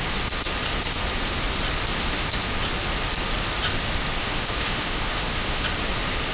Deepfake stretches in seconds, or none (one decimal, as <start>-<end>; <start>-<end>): 1.8-2.4; 4.2-5.6